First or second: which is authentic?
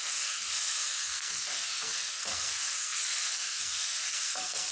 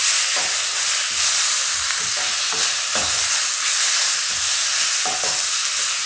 second